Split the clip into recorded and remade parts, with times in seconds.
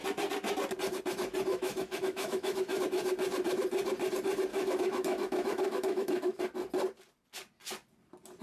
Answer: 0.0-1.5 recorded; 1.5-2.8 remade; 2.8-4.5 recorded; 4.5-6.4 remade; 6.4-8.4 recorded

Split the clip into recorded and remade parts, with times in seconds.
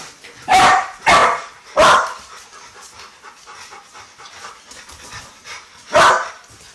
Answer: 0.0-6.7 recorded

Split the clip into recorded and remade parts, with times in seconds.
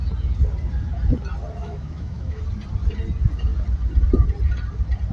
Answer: 0.0-1.6 recorded; 1.6-2.4 remade; 2.4-5.1 recorded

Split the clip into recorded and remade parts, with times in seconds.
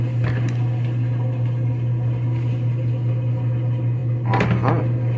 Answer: 0.0-5.2 recorded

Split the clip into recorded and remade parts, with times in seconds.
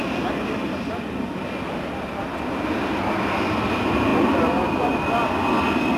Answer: 0.0-6.0 recorded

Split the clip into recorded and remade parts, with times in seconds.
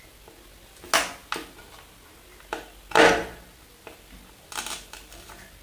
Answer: 0.0-5.6 recorded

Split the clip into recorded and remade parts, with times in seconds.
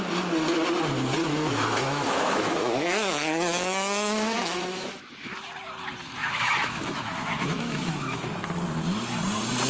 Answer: 0.0-1.2 recorded; 1.2-5.3 remade; 5.3-6.2 recorded; 6.2-8.2 remade; 8.2-9.7 recorded